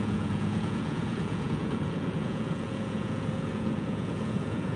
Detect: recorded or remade remade